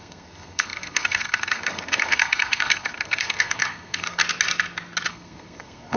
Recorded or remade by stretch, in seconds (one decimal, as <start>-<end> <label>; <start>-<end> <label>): 0.0-4.2 remade; 4.2-5.1 recorded; 5.1-6.0 remade